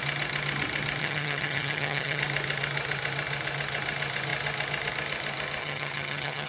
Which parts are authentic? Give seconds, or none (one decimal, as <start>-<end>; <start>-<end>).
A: 0.0-1.0; 2.2-5.6